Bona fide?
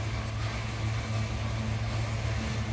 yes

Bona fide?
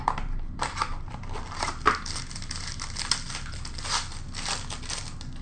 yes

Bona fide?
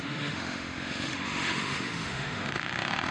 no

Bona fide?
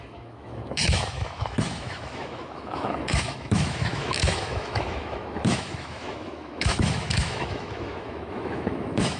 no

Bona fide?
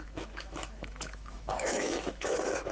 no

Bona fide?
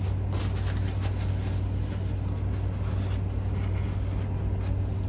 yes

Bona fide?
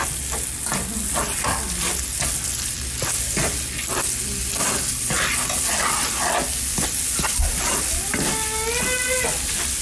yes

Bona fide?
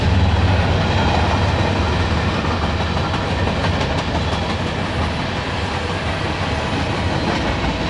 yes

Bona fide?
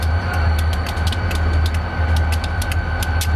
yes